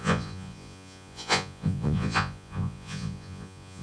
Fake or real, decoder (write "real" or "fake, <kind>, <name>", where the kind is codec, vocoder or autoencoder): fake, vocoder, Vocos